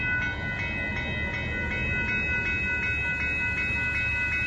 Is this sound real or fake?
real